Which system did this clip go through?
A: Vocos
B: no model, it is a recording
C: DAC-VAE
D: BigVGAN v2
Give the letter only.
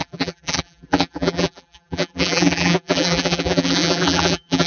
D